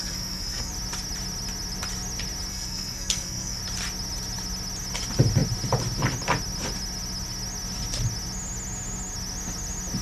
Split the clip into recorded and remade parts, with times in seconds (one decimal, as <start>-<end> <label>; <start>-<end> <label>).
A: 0.0-0.7 remade; 0.7-2.5 recorded; 2.5-3.6 remade; 3.6-10.0 recorded